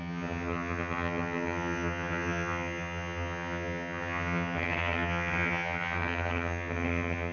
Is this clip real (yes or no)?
no